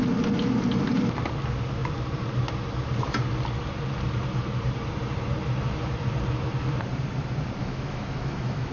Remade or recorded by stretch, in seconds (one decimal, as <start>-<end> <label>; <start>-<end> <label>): 0.0-7.6 recorded; 7.6-8.7 remade